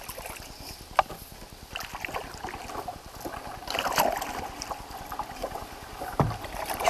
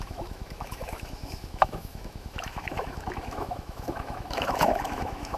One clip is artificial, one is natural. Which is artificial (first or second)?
second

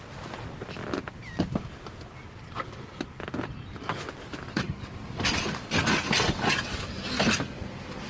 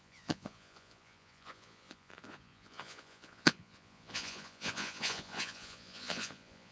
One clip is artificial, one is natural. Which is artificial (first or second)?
second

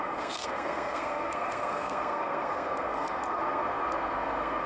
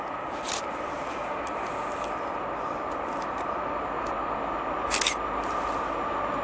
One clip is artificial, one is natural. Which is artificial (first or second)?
first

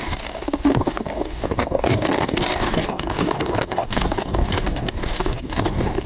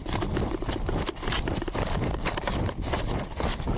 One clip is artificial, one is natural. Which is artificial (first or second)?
first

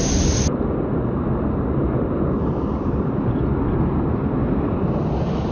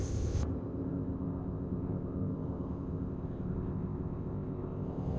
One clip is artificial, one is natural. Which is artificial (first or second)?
second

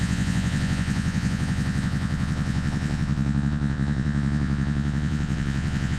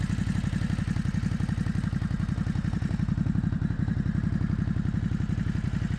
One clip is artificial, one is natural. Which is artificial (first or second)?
first